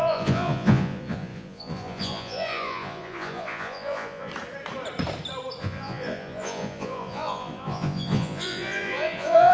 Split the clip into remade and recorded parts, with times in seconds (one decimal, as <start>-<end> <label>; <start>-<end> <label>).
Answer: 0.0-4.3 remade; 4.3-5.6 recorded; 5.6-9.5 remade